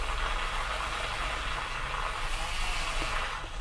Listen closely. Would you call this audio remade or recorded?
recorded